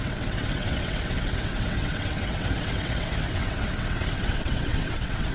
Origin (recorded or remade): remade